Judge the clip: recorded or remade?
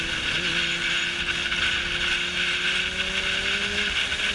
recorded